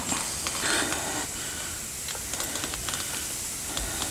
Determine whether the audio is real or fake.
real